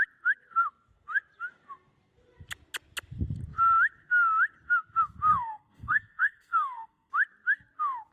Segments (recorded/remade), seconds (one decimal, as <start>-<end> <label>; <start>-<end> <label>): 0.0-5.3 recorded; 5.3-7.1 remade; 7.1-8.1 recorded